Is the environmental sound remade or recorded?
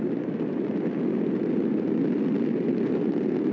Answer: recorded